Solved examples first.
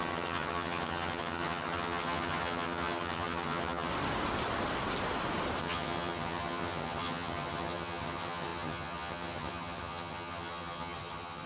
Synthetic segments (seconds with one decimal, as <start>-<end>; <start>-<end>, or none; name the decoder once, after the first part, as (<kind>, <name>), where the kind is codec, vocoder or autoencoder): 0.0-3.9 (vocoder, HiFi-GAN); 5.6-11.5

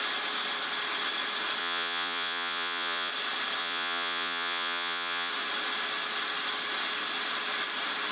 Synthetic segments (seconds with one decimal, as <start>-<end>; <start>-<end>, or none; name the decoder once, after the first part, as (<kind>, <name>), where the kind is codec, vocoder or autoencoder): 1.6-3.1 (vocoder, Vocos); 3.6-5.3

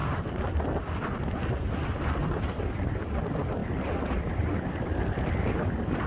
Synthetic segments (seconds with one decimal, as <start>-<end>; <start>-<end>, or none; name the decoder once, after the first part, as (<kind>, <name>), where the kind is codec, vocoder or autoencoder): none

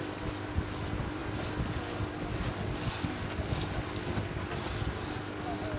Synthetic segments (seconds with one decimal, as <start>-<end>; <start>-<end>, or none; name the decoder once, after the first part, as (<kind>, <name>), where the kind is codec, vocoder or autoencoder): none